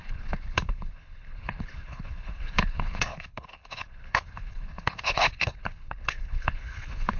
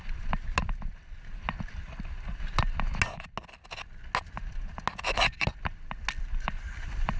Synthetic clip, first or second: first